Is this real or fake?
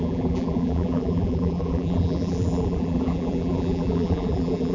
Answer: fake